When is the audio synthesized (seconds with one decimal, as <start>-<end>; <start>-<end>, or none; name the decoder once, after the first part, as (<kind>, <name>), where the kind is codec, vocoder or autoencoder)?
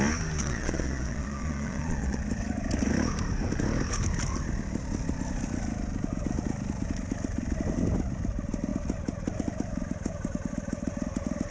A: 0.4-2.2 (vocoder, Vocos)